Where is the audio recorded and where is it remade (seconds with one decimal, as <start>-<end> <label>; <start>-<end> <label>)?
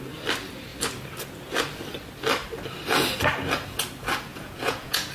0.0-4.3 recorded; 4.3-5.1 remade